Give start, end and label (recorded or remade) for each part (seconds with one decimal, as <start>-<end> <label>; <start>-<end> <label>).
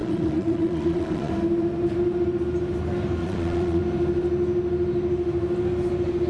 0.0-1.3 remade; 1.3-3.2 recorded; 3.2-3.8 remade; 3.8-6.3 recorded